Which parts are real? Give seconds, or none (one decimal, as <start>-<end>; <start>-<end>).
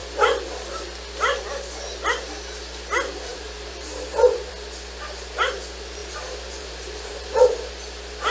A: 0.0-3.3; 4.5-6.0; 7.7-8.3